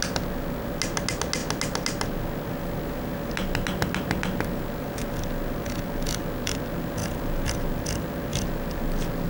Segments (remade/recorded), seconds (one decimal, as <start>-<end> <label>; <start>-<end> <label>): 0.0-9.3 recorded